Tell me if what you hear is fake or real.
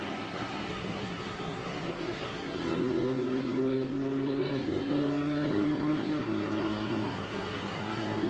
fake